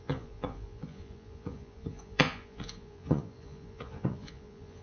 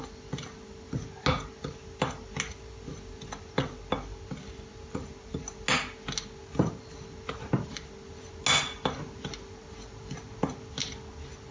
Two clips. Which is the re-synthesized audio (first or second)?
first